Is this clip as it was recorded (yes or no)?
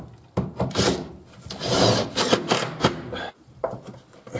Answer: yes